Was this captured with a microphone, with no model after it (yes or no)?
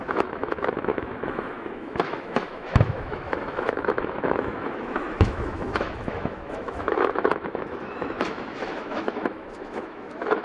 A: no